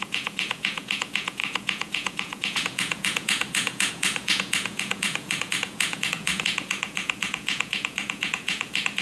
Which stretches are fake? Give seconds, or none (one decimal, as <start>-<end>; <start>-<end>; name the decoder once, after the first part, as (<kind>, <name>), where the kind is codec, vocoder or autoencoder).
0.0-9.0 (vocoder, Vocos)